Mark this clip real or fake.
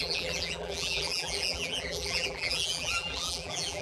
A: fake